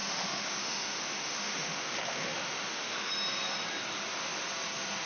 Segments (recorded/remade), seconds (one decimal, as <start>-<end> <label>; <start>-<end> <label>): 0.0-3.1 remade; 3.1-5.1 recorded